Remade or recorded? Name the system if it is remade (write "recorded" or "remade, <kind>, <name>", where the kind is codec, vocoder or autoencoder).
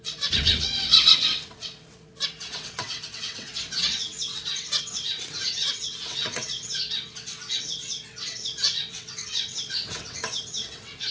remade, vocoder, WaveNeXt